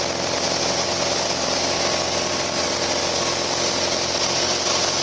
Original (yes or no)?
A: yes